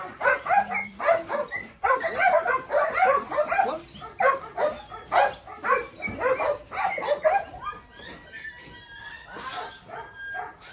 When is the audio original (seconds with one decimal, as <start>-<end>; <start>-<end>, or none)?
0.0-10.7